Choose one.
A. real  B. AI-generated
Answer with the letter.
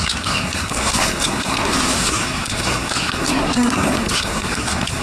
B